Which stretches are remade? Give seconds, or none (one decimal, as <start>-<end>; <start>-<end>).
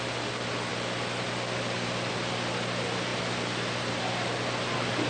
none